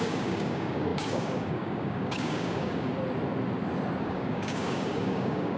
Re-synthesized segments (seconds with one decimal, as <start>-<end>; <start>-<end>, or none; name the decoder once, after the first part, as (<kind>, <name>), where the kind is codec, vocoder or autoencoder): 0.0-2.9 (codec, DAC); 4.0-5.6